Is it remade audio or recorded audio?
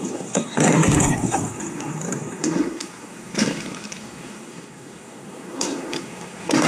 remade